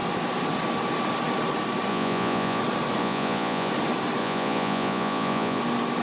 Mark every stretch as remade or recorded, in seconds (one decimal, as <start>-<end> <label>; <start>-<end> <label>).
0.0-1.9 recorded; 1.9-2.6 remade; 2.6-3.0 recorded; 3.0-3.7 remade; 3.7-4.2 recorded; 4.2-5.6 remade; 5.6-6.0 recorded